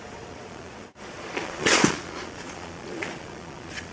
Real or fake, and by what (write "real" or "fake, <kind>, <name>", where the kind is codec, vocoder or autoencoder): fake, vocoder, Vocos